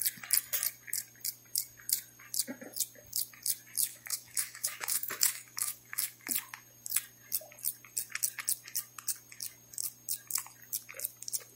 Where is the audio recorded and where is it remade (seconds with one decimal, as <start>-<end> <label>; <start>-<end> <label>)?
0.0-3.9 recorded; 3.9-6.3 remade; 6.3-11.6 recorded